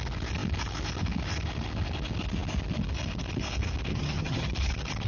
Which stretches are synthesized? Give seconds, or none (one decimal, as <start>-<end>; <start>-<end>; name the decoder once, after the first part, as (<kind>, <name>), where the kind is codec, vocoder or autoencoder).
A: 3.9-4.5 (vocoder, HiFi-GAN)